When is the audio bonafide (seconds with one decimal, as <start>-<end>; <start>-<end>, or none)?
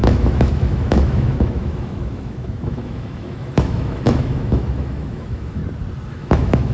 5.6-6.1